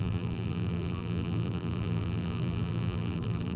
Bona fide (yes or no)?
no